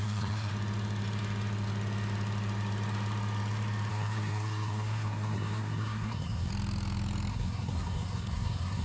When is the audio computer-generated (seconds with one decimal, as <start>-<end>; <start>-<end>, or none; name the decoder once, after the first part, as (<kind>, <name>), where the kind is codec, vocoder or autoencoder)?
0.0-0.5 (codec, SNAC); 3.9-6.5; 7.3-8.8